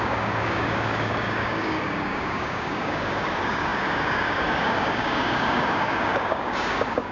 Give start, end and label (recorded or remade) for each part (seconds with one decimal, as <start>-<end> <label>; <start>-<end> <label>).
0.0-7.1 remade

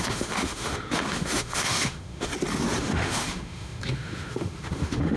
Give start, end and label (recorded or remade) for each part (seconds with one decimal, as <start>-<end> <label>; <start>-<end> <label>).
0.0-2.3 remade; 2.3-2.8 recorded; 2.8-5.2 remade